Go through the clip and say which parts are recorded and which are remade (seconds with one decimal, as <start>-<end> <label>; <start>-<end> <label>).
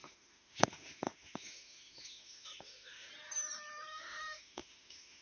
0.0-3.1 remade; 3.1-3.9 recorded; 3.9-5.2 remade